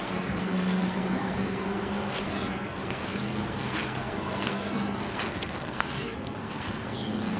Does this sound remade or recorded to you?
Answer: remade